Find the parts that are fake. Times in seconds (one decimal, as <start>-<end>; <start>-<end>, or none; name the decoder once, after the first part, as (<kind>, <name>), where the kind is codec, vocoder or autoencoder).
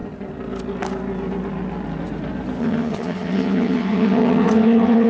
2.6-5.1 (vocoder, HiFi-GAN)